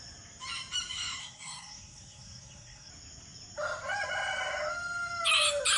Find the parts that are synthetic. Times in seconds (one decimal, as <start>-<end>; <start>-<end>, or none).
1.2-2.9